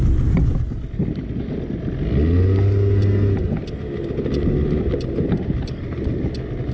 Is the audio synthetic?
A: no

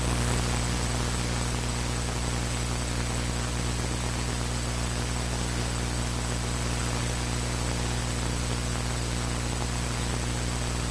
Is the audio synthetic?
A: no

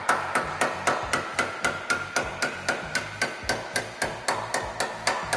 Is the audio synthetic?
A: no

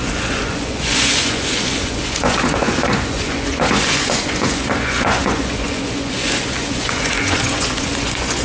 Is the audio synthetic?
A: yes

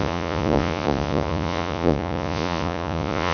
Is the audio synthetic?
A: yes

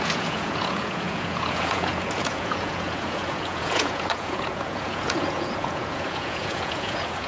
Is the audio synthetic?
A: yes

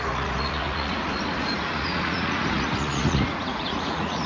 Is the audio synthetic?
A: yes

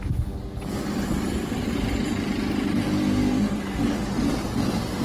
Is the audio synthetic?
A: no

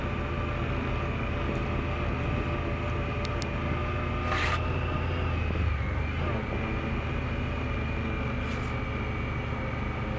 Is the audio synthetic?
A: no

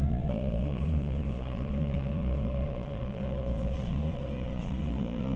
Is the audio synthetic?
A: yes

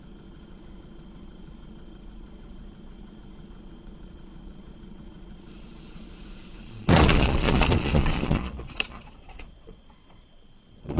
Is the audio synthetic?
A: yes